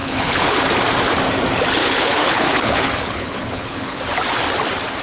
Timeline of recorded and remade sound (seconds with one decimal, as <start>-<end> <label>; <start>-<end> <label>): 0.0-0.6 remade; 0.6-1.8 recorded; 1.8-4.0 remade; 4.0-5.0 recorded

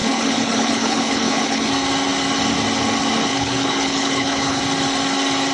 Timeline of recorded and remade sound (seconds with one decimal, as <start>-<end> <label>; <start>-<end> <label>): 0.0-1.7 remade; 1.7-3.3 recorded; 3.3-4.6 remade; 4.6-5.5 recorded

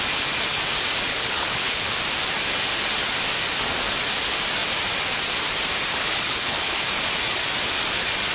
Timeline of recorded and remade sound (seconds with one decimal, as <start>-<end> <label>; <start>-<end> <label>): 0.0-1.1 recorded; 1.1-1.9 remade; 1.9-5.9 recorded; 5.9-6.8 remade; 6.8-8.3 recorded

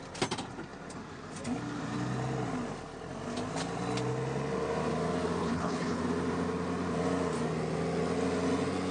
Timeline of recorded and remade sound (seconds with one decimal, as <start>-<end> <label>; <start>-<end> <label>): 0.0-5.4 recorded; 5.4-6.0 remade; 6.0-8.9 recorded

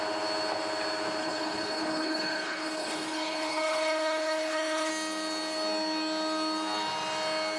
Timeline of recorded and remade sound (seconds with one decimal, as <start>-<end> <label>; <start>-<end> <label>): 0.0-1.2 recorded; 1.2-4.9 remade; 4.9-7.6 recorded

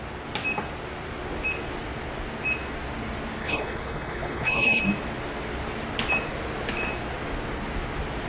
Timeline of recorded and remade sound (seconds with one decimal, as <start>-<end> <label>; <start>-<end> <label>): 0.0-3.4 recorded; 3.4-4.8 remade; 4.8-8.3 recorded

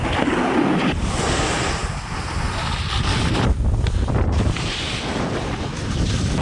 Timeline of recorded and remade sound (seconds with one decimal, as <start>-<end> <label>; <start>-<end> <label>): 0.0-6.4 recorded